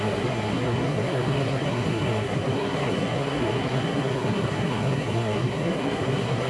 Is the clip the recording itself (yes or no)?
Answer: no